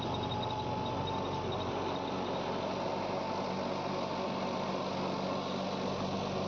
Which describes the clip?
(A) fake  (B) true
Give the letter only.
B